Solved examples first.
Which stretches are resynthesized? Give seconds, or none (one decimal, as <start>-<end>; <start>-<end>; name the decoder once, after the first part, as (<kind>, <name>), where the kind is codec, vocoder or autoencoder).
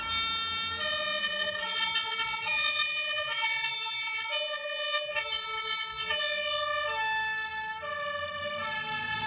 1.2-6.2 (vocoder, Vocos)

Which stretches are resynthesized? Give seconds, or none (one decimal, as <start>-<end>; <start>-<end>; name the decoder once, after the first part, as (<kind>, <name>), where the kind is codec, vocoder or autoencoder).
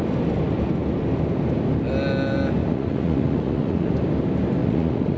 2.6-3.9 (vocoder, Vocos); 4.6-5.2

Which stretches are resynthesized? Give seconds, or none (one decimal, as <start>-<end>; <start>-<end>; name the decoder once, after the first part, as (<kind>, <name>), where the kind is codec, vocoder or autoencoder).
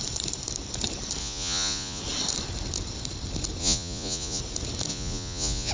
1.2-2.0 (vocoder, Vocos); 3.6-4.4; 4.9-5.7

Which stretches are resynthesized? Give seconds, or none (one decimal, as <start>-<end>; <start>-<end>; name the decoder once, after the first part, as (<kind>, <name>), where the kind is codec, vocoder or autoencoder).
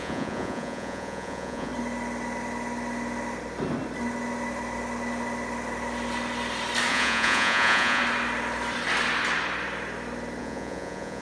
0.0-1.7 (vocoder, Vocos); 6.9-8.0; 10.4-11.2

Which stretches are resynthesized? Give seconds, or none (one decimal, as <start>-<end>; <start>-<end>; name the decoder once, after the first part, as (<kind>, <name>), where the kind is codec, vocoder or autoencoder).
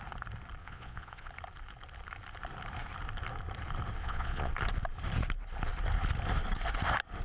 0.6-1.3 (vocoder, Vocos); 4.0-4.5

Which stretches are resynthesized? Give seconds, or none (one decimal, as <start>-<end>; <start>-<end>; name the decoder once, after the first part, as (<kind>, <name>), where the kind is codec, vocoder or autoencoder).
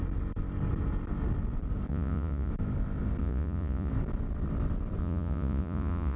1.9-2.5 (vocoder, Vocos); 3.2-3.9; 5.0-6.2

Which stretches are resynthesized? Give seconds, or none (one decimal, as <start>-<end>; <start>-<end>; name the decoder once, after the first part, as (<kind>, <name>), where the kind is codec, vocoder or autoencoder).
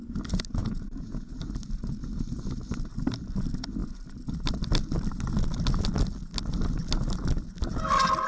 0.6-1.3 (vocoder, Vocos)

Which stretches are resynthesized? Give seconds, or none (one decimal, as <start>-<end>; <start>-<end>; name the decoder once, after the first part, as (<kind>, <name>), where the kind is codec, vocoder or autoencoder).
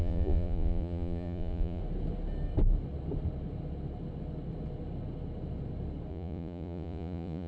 0.0-1.8 (vocoder, Vocos); 6.1-7.5